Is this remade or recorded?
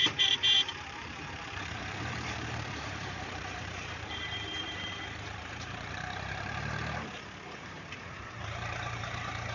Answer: remade